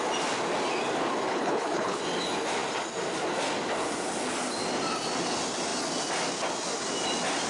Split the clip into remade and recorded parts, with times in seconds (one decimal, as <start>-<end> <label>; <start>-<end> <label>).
0.0-1.3 recorded; 1.3-2.0 remade; 2.0-7.5 recorded